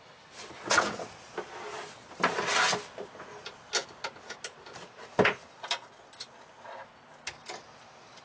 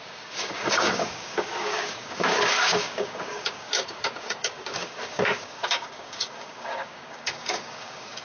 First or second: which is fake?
second